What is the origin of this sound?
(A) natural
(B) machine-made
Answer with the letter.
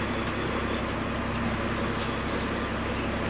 A